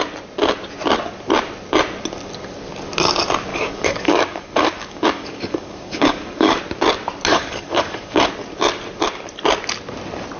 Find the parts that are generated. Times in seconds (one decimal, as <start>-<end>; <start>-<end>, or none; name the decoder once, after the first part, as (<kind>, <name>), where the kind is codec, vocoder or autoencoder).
3.5-6.6 (codec, DAC); 7.3-8.3